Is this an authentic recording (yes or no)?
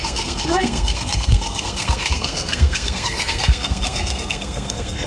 no